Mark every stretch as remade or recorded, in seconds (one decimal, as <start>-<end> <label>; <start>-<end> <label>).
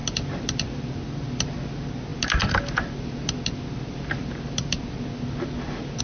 0.0-6.0 recorded